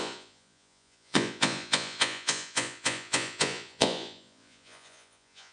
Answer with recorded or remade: remade